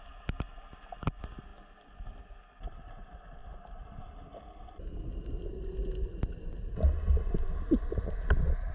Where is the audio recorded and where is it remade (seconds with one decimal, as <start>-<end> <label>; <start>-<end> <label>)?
0.0-8.7 recorded